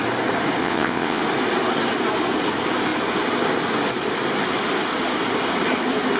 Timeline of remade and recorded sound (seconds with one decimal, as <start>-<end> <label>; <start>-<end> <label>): 0.0-0.6 recorded; 0.6-1.2 remade; 1.2-6.2 recorded